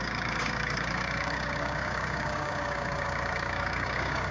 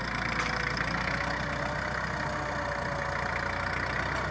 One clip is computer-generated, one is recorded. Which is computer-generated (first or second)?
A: first